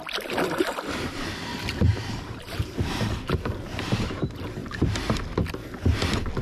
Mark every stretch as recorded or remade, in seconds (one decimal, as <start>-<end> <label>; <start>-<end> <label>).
0.0-1.5 recorded; 1.5-4.0 remade; 4.0-4.6 recorded; 4.6-5.4 remade; 5.4-6.4 recorded